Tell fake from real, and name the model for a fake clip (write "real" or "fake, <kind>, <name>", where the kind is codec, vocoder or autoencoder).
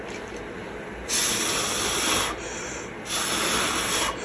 real